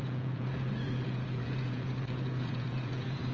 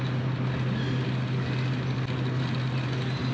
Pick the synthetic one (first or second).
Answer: first